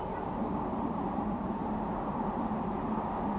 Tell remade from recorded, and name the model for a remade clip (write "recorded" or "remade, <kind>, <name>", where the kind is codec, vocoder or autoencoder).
remade, vocoder, BigVGAN v2